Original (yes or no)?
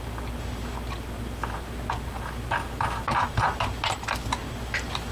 yes